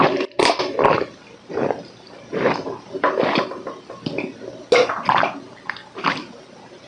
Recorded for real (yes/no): yes